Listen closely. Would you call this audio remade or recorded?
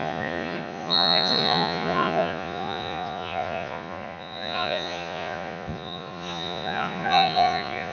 remade